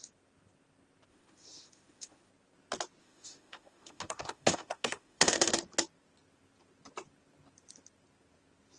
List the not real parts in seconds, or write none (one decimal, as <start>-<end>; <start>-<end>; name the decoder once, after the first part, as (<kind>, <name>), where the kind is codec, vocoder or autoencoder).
1.1-2.3 (autoencoder, DAC-VAE); 3.0-5.5